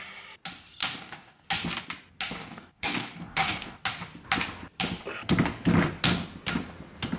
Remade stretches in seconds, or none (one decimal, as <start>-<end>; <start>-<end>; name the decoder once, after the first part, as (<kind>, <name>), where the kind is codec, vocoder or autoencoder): 0.8-1.4 (codec, DAC); 2.4-3.8